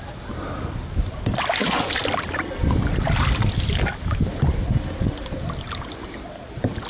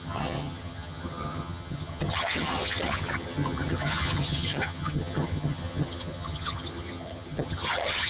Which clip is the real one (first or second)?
first